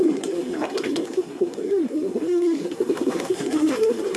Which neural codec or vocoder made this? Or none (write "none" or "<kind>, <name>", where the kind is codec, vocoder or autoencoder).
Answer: codec, SNAC